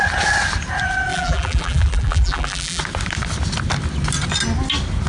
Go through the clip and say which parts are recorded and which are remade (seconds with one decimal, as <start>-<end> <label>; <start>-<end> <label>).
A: 0.0-1.1 recorded; 1.1-2.8 remade; 2.8-5.1 recorded